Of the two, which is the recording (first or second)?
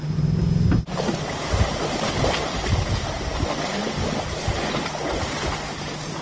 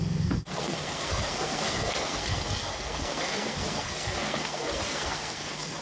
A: first